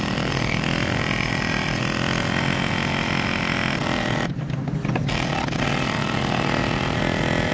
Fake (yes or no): no